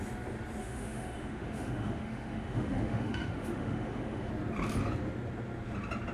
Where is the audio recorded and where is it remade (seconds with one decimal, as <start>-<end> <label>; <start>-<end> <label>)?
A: 0.0-0.6 recorded; 0.6-4.3 remade; 4.3-6.1 recorded